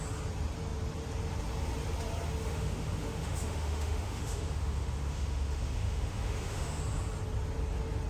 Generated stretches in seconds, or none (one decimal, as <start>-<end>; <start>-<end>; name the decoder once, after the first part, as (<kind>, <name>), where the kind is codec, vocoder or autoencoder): 2.4-6.8 (autoencoder, DAC-VAE)